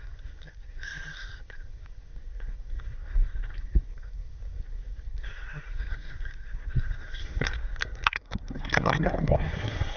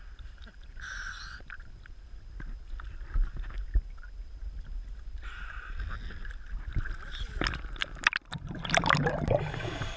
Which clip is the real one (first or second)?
second